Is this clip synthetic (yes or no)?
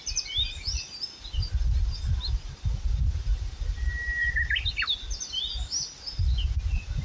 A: no